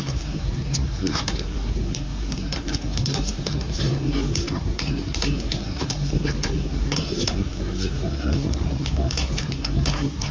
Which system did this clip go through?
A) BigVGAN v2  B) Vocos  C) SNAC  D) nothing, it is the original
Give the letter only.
C